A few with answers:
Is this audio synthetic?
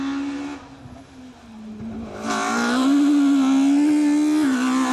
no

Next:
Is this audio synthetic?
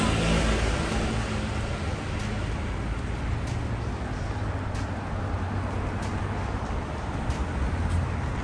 no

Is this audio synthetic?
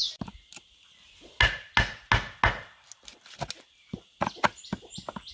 no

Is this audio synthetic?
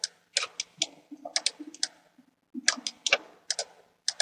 no